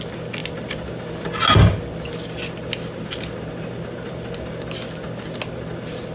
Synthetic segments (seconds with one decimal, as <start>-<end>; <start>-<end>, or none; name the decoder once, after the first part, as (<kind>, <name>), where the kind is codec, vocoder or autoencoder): none